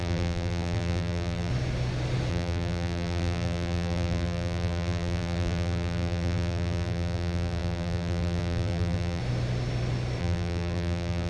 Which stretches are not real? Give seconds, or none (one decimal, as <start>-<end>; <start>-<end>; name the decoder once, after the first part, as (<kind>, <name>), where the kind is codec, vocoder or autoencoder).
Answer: 0.0-1.5 (vocoder, BigVGAN v2); 2.3-9.2; 10.2-11.3